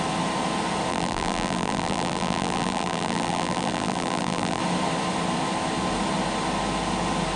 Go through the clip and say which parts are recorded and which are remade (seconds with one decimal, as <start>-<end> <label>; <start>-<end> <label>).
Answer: 0.0-0.9 recorded; 0.9-4.6 remade; 4.6-7.4 recorded